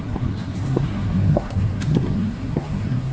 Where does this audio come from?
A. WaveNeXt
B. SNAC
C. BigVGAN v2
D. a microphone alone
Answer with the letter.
B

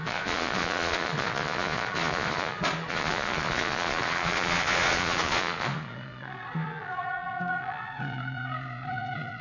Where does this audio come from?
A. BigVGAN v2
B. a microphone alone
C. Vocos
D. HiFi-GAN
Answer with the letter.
C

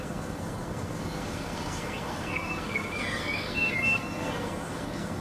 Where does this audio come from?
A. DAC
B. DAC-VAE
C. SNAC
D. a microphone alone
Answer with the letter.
C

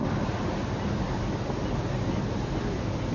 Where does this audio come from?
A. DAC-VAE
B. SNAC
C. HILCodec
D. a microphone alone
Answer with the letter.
D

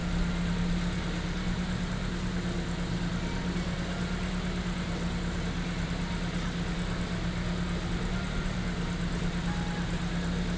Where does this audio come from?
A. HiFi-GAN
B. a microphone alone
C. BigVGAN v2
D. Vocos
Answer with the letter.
B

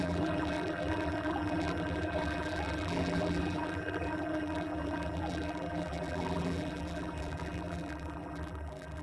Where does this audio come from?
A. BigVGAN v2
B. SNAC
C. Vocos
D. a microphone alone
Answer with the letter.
A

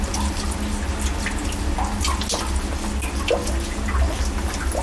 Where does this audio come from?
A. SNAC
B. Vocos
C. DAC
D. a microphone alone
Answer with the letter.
D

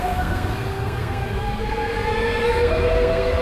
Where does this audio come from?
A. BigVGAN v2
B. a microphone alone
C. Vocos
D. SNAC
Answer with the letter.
D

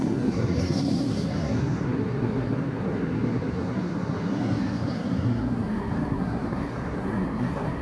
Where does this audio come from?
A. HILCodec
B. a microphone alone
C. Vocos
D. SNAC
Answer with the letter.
D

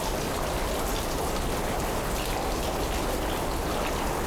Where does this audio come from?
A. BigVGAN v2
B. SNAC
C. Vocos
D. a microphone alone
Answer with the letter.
D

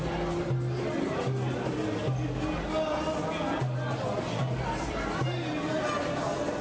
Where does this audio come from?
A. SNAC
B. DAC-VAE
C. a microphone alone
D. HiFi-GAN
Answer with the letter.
C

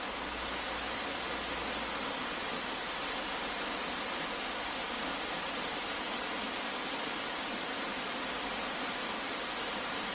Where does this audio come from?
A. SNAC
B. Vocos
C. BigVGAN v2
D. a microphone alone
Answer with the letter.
D